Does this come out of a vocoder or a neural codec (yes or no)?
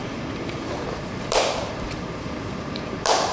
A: yes